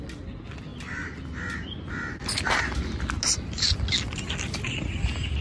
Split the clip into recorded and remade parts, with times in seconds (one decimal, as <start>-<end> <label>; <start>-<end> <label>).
0.0-5.4 recorded